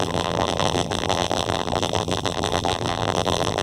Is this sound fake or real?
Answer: fake